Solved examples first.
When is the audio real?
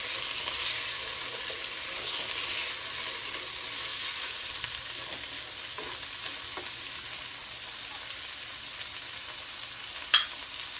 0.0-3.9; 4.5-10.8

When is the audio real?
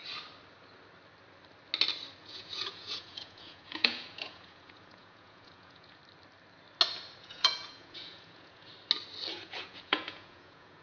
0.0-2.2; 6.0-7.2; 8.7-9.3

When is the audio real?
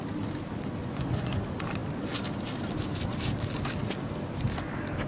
0.0-0.8; 1.4-5.1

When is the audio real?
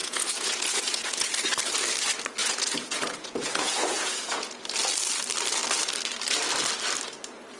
1.3-2.4; 4.6-7.6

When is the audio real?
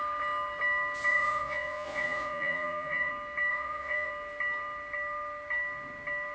0.0-1.1; 3.1-3.5; 4.1-6.3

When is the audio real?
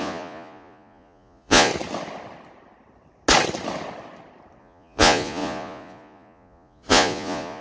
1.7-4.6